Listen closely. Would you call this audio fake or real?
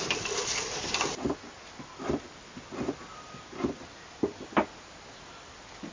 real